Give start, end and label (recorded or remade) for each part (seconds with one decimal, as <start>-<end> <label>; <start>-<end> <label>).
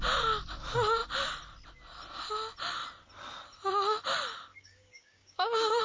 0.0-4.5 recorded; 4.5-5.8 remade